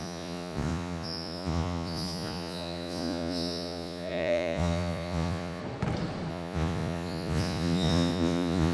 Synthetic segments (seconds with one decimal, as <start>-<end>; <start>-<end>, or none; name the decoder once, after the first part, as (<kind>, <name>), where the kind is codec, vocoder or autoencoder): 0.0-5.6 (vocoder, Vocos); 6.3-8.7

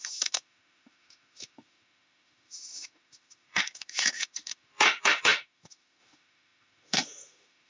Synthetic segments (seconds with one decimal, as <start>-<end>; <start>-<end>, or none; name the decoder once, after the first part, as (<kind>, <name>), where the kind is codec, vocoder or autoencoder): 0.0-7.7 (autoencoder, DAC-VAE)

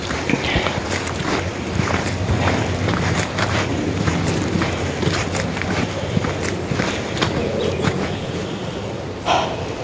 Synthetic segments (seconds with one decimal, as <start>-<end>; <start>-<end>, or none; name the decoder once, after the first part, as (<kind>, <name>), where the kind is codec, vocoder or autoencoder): 7.4-8.4 (vocoder, Vocos)

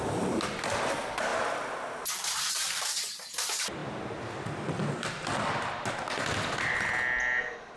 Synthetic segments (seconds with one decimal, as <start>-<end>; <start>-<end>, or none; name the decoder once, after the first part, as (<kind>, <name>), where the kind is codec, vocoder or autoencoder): none

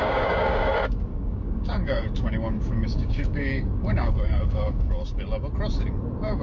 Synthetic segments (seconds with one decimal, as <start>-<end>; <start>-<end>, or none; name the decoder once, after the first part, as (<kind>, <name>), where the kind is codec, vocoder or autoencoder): 0.0-0.7 (codec, DAC); 1.1-4.9

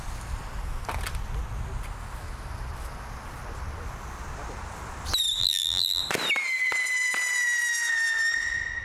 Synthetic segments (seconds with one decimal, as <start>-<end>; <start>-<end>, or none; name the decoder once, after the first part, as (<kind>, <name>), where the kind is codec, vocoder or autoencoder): 5.4-6.0 (vocoder, BigVGAN v2)

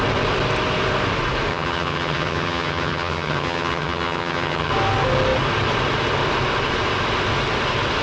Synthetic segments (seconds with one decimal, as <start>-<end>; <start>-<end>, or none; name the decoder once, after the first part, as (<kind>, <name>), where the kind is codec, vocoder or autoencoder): 1.5-4.7 (vocoder, HiFi-GAN)